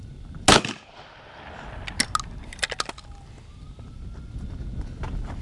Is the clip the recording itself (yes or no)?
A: yes